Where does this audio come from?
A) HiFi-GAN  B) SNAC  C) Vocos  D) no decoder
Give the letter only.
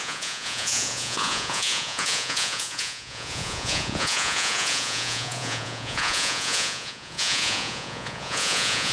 C